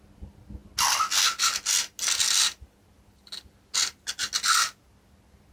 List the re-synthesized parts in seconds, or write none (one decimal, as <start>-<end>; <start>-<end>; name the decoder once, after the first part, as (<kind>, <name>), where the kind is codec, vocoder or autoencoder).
none